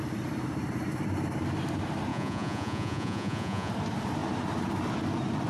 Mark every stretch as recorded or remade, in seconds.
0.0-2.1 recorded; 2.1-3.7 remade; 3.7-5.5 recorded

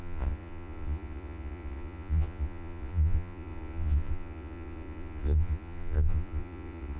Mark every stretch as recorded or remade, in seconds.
0.0-7.0 remade

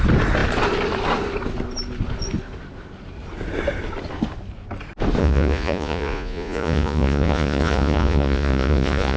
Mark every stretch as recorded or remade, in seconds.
0.0-5.2 recorded; 5.2-9.2 remade

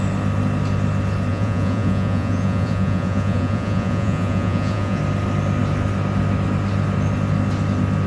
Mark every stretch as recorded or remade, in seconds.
0.0-1.3 recorded; 1.3-5.0 remade; 5.0-8.1 recorded

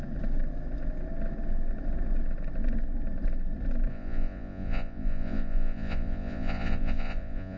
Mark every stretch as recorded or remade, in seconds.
0.0-3.9 recorded; 3.9-7.6 remade

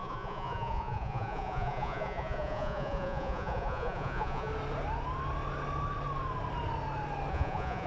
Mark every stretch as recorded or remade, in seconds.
0.0-4.5 remade; 4.5-7.3 recorded; 7.3-7.9 remade